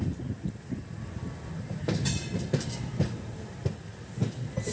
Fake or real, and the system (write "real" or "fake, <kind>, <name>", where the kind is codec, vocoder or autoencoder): real